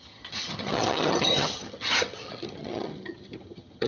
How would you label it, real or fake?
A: fake